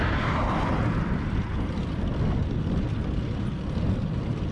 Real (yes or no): yes